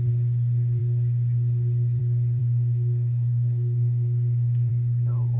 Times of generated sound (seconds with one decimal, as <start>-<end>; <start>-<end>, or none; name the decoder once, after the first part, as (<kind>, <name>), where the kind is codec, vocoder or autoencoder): 2.4-4.7 (codec, SNAC)